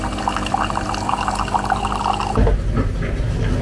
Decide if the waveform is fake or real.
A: real